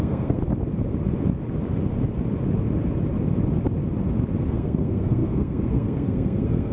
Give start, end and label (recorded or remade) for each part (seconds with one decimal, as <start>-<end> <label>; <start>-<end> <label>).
0.0-0.4 remade; 0.4-4.4 recorded; 4.4-6.7 remade